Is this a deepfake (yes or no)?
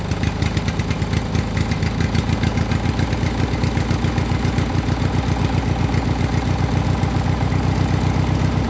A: no